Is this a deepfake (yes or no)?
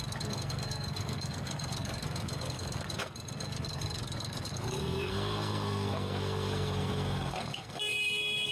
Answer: yes